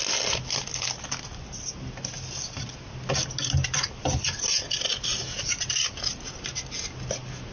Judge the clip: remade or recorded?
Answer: recorded